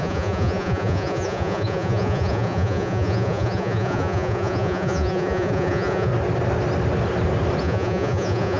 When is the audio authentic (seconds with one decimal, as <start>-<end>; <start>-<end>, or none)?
6.1-7.6